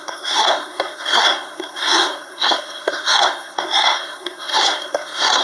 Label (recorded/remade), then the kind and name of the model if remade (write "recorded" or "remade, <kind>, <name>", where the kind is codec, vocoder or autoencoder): remade, codec, SNAC